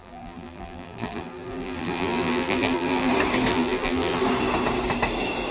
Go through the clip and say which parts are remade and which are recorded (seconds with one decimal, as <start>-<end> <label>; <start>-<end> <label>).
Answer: 0.0-3.1 remade; 3.1-3.5 recorded; 3.5-4.2 remade; 4.2-5.5 recorded